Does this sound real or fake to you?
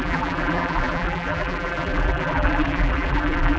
fake